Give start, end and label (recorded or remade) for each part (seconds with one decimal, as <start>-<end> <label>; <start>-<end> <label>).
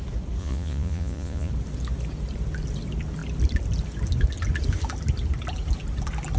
0.0-0.4 recorded; 0.4-1.5 remade; 1.5-6.4 recorded